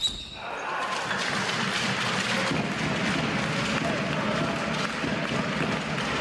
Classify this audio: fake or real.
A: real